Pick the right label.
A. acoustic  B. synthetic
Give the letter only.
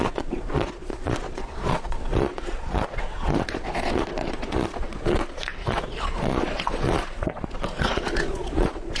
B